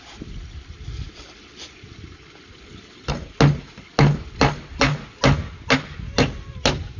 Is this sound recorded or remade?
recorded